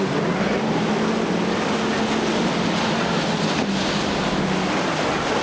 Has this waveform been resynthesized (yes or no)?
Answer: no